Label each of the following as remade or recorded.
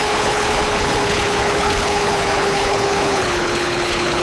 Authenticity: remade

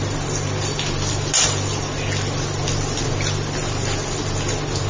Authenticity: recorded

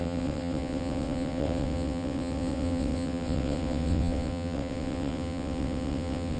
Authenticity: remade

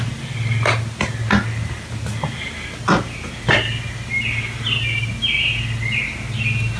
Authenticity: recorded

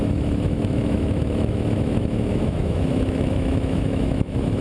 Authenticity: remade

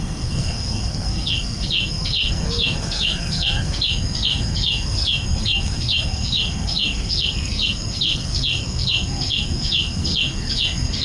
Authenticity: remade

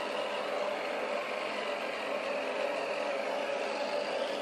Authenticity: recorded